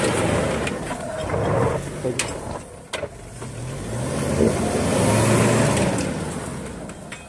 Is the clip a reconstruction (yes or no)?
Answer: no